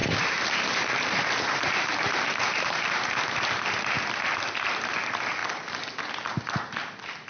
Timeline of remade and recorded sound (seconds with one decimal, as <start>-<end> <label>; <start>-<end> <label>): 0.0-3.5 remade; 3.5-7.3 recorded